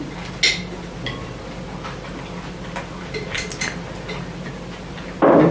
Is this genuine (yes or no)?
yes